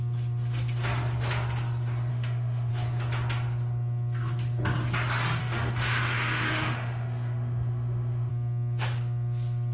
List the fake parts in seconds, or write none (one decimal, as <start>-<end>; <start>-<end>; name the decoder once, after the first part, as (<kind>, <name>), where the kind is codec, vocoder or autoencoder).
2.1-2.7 (autoencoder, DAC-VAE); 5.4-8.3